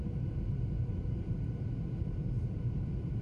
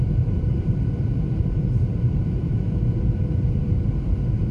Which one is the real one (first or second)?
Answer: first